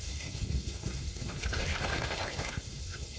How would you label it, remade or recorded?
remade